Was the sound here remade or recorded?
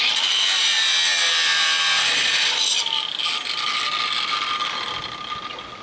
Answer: recorded